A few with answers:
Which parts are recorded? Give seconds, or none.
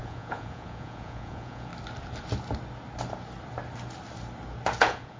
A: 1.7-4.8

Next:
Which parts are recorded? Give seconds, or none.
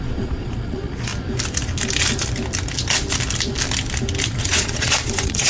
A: 1.1-4.4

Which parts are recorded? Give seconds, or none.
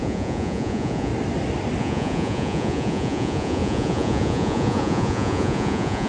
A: 1.1-1.8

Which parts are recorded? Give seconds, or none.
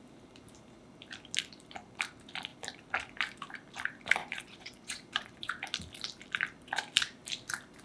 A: 0.0-4.2; 5.5-7.8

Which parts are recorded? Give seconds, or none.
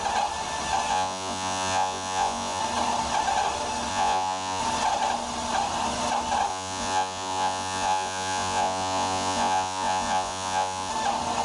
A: 0.0-0.9; 2.6-3.9; 4.6-6.5; 10.9-11.4